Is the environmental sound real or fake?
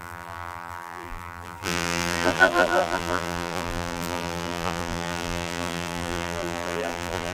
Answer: fake